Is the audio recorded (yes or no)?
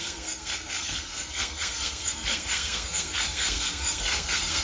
no